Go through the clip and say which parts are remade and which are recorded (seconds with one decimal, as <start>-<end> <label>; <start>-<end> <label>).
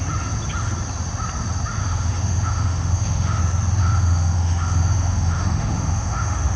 0.0-1.8 recorded; 1.8-3.4 remade; 3.4-3.8 recorded; 3.8-6.6 remade